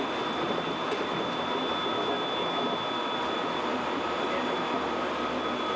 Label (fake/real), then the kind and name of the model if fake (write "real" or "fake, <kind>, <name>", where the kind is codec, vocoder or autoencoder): real